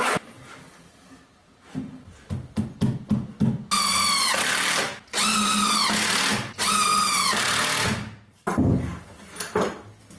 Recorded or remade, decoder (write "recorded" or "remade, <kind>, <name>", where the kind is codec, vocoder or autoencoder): recorded